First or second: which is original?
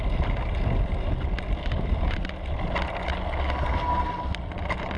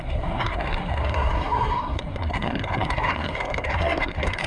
first